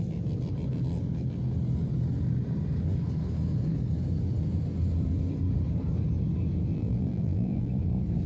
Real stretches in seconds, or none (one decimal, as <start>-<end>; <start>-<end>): 0.0-6.7; 7.7-8.3